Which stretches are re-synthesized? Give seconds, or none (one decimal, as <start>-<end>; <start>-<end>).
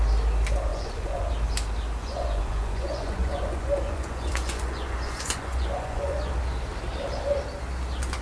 0.7-1.3; 2.0-6.3